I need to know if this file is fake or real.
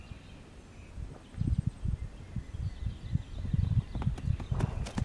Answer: real